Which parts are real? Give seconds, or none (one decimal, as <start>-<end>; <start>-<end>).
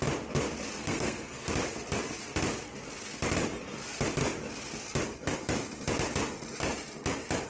0.0-0.8; 1.5-7.5